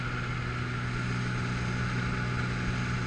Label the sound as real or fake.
real